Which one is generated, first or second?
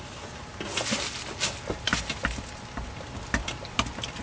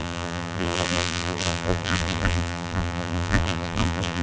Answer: second